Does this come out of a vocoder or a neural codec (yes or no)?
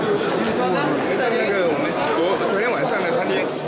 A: no